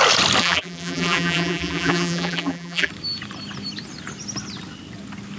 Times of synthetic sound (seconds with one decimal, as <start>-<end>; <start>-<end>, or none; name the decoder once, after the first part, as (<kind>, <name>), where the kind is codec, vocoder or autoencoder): 0.4-2.9 (vocoder, BigVGAN v2)